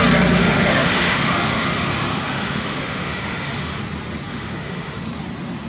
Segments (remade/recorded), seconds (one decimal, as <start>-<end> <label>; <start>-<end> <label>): 0.0-0.4 recorded; 0.4-3.8 remade; 3.8-4.3 recorded; 4.3-5.0 remade; 5.0-5.7 recorded